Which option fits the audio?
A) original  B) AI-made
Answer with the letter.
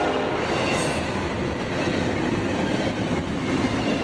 B